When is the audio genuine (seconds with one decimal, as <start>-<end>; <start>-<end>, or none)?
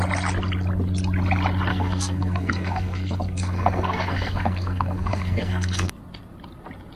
0.0-1.7; 5.9-7.0